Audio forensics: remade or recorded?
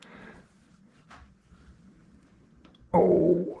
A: recorded